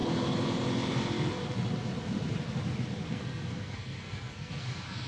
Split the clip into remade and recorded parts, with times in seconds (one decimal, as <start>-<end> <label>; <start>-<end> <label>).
0.0-3.1 recorded; 3.1-5.1 remade